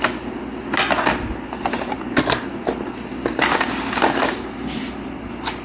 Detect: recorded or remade recorded